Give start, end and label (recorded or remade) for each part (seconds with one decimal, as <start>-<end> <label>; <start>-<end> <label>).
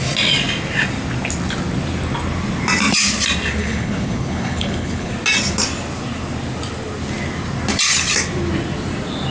0.0-3.6 recorded; 3.6-5.1 remade; 5.1-9.3 recorded